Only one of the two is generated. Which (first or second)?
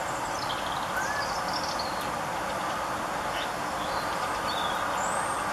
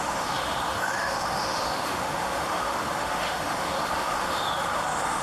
second